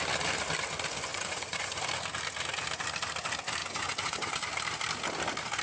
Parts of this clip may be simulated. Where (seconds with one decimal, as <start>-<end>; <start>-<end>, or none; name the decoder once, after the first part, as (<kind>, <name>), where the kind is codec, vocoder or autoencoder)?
1.1-1.8 (vocoder, Vocos); 3.6-4.3